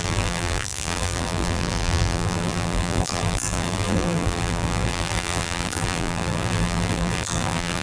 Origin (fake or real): fake